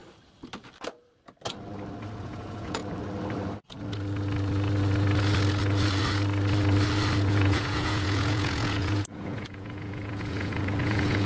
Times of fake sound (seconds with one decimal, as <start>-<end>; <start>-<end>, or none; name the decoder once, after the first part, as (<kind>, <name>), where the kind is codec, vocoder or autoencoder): 2.2-2.8 (vocoder, Vocos); 7.3-11.3